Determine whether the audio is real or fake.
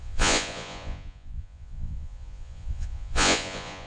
fake